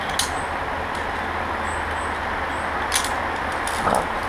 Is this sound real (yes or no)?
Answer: yes